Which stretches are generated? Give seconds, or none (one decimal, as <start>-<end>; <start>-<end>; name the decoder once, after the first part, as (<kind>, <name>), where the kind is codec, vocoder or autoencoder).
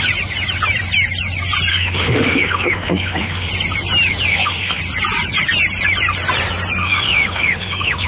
1.7-3.5 (autoencoder, DAC-VAE); 4.3-4.8; 6.8-8.1